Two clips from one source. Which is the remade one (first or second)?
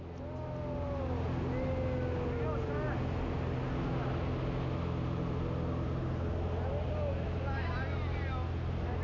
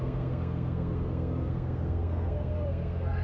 second